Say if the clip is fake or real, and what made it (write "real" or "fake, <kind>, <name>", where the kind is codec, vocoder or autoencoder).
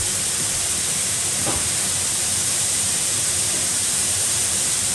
fake, vocoder, BigVGAN v2